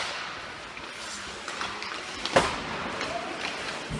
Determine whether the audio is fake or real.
real